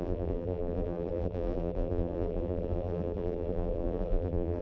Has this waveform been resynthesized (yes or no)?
yes